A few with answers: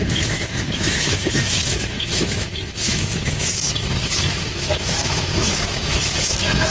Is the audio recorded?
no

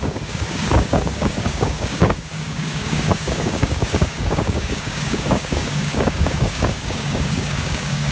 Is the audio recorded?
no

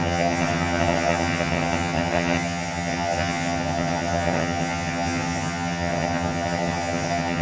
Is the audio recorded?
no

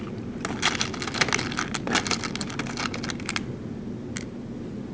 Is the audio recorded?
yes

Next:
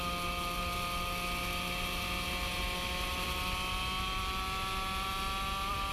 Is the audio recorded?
yes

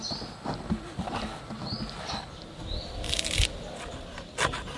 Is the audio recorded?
yes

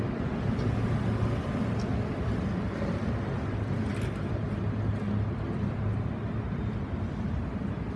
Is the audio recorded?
yes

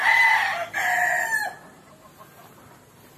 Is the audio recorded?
yes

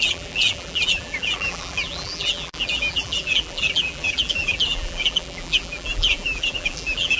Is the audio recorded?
no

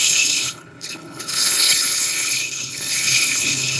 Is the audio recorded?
no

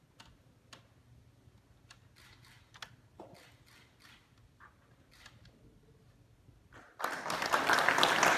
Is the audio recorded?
yes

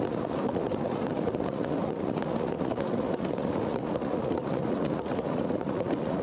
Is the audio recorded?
no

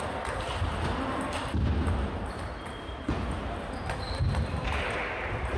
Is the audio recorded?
yes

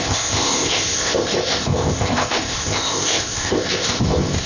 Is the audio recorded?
no